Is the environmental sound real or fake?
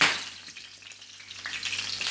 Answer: real